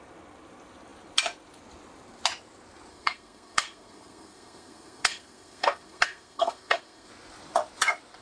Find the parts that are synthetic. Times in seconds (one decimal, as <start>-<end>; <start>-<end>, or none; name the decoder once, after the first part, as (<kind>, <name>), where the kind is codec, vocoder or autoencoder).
2.9-7.1 (codec, SNAC)